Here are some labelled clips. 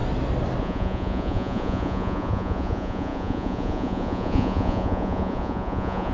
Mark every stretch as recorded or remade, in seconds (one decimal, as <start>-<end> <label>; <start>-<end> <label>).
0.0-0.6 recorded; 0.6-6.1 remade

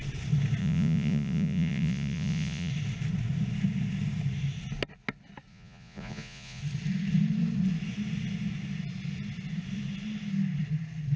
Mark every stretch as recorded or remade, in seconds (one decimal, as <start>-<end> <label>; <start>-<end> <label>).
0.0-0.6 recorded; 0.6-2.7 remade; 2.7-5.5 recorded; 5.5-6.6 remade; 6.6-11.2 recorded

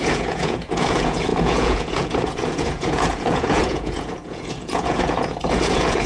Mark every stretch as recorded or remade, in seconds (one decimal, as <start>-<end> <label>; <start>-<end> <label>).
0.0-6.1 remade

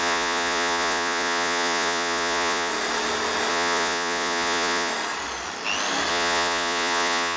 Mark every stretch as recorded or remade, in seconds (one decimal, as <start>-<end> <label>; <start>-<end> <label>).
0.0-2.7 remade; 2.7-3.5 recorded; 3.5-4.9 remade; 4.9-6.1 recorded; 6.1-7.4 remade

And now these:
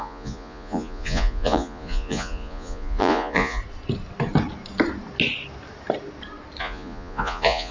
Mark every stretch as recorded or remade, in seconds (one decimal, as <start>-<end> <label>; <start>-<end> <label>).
0.0-3.6 remade; 3.6-6.6 recorded; 6.6-7.7 remade

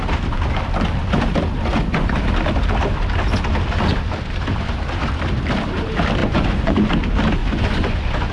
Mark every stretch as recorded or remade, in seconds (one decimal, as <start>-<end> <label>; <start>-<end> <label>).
0.0-1.7 recorded; 1.7-2.2 remade; 2.2-6.2 recorded; 6.2-6.9 remade; 6.9-7.4 recorded; 7.4-8.3 remade

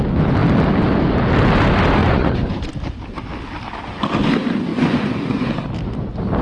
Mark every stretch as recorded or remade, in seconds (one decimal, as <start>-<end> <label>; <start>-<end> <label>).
0.0-2.0 recorded; 2.0-2.7 remade; 2.7-4.7 recorded; 4.7-5.5 remade; 5.5-6.4 recorded

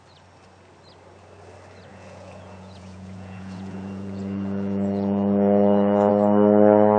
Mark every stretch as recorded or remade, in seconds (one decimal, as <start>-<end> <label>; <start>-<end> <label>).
0.0-1.9 recorded; 1.9-6.1 remade; 6.1-7.0 recorded